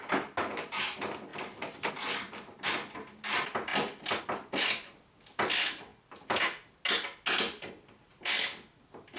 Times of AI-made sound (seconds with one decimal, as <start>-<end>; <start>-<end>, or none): none